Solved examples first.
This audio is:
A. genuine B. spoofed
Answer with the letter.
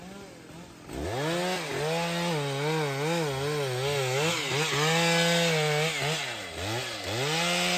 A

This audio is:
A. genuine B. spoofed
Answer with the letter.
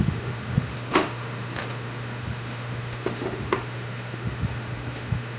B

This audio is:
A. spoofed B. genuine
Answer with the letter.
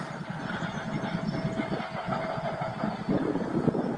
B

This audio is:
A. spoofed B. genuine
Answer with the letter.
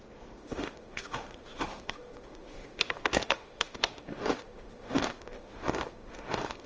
A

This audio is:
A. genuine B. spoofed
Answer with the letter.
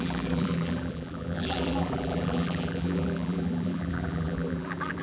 B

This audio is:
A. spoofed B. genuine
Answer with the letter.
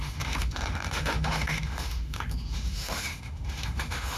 A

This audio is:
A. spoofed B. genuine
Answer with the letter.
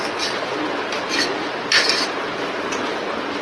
B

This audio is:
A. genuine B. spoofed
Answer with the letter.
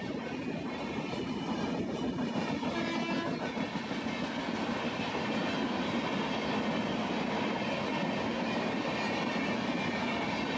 A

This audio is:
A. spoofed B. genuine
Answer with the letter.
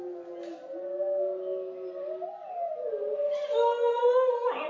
B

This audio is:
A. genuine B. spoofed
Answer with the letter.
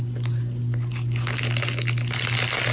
A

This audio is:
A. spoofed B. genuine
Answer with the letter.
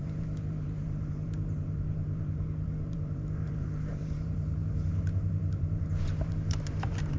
A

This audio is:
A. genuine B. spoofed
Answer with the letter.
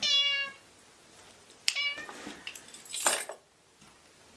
A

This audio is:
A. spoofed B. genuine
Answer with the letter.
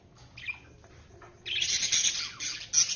B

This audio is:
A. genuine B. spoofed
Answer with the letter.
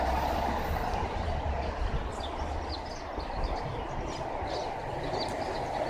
A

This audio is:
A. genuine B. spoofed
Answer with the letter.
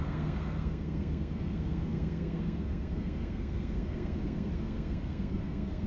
B